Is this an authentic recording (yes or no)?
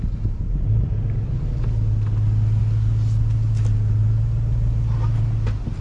yes